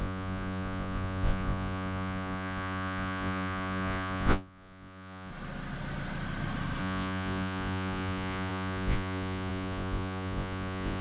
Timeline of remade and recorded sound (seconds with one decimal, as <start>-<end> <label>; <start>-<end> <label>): 0.0-5.3 remade; 5.3-6.8 recorded; 6.8-11.0 remade